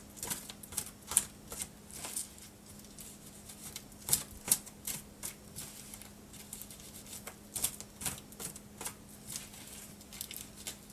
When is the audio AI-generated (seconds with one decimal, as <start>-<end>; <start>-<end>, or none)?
none